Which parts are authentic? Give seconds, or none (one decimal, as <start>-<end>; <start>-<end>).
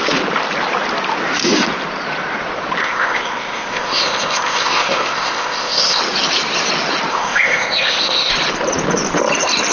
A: 0.0-2.8; 6.0-7.1; 8.3-9.7